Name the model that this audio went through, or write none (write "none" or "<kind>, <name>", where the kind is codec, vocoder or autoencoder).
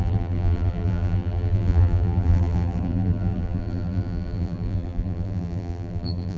vocoder, BigVGAN v2